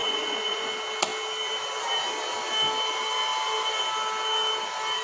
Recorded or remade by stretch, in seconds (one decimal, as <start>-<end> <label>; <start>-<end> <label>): 0.0-0.7 remade; 0.7-5.0 recorded